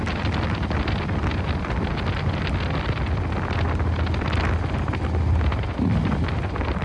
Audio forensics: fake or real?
real